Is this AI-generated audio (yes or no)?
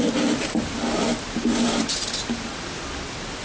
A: no